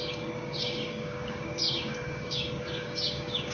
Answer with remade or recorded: remade